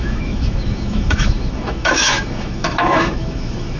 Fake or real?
fake